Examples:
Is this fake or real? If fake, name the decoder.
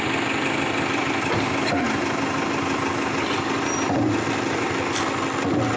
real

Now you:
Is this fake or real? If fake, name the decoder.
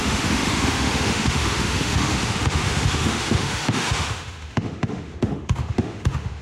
fake, autoencoder, DAC-VAE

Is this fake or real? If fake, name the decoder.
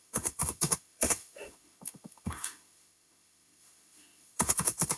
fake, autoencoder, DAC-VAE